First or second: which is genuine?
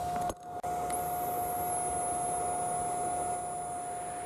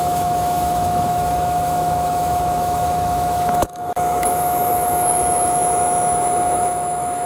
first